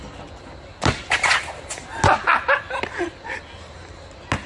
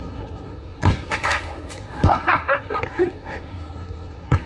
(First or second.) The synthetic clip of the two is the second